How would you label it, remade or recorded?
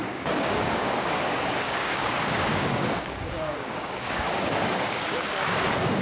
remade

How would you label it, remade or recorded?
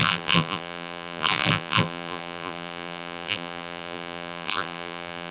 remade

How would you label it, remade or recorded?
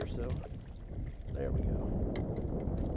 recorded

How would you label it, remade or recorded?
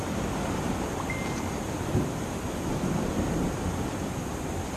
recorded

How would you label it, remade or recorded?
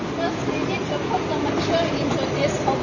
recorded